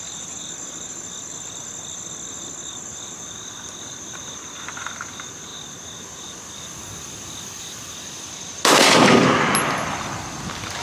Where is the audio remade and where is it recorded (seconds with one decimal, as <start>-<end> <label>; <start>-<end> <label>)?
0.0-10.8 recorded